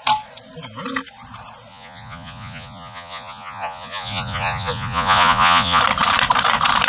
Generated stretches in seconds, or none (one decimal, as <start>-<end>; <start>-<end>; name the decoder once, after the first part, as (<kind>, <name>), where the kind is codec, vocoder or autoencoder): 1.7-5.8 (vocoder, Vocos)